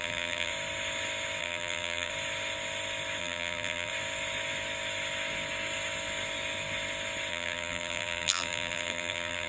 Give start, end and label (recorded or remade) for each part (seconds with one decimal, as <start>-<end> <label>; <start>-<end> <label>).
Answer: 0.0-0.5 remade; 0.5-1.4 recorded; 1.4-2.1 remade; 2.1-3.2 recorded; 3.2-3.9 remade; 3.9-7.3 recorded; 7.3-9.5 remade